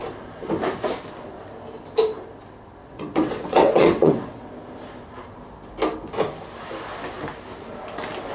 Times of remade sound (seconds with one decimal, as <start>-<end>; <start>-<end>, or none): 2.8-4.5